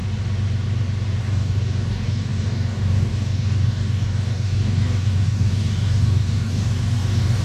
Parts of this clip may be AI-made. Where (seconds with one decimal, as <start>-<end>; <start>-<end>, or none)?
1.2-7.4